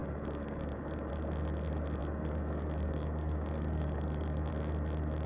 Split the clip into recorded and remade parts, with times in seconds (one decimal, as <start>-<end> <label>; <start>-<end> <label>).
0.0-1.1 remade; 1.1-2.0 recorded; 2.0-4.5 remade; 4.5-5.3 recorded